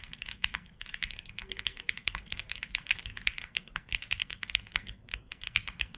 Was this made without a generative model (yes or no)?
no